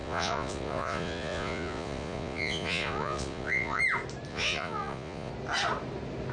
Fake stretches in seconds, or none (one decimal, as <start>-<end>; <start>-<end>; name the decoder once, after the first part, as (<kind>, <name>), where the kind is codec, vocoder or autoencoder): 0.0-3.8 (vocoder, Vocos); 4.3-5.3